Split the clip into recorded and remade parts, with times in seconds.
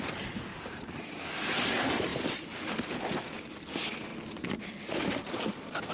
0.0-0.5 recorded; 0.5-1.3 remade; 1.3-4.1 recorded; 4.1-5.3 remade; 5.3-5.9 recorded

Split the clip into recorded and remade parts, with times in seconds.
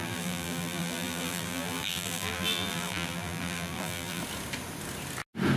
0.0-4.2 remade; 4.2-5.6 recorded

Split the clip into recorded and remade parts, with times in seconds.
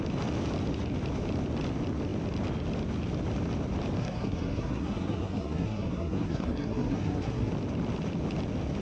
0.0-4.0 recorded; 4.0-7.5 remade; 7.5-8.8 recorded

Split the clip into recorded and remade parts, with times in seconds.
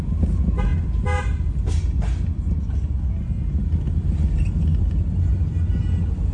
0.0-6.3 recorded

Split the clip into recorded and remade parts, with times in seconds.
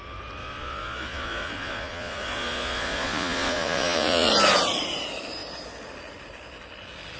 0.0-0.4 recorded; 0.4-4.3 remade; 4.3-7.2 recorded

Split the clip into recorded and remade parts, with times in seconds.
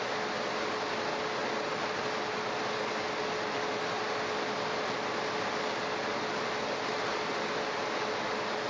0.0-8.7 recorded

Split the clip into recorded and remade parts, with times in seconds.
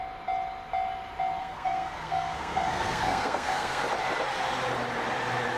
0.0-1.4 recorded; 1.4-3.8 remade; 3.8-5.6 recorded